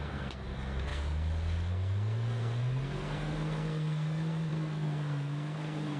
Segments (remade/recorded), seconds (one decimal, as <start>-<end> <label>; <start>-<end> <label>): 0.0-6.0 remade